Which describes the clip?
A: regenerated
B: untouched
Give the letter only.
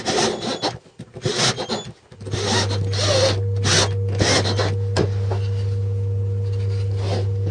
B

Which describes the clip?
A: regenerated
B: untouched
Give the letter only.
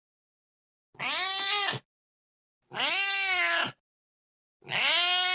B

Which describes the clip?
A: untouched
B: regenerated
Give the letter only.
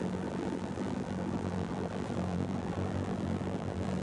B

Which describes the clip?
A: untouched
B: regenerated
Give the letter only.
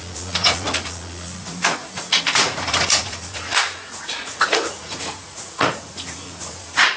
B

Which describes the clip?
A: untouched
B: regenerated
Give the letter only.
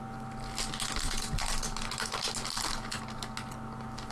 A